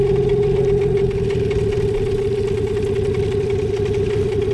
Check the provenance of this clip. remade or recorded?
recorded